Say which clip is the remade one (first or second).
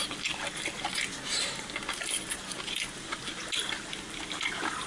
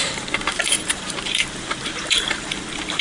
second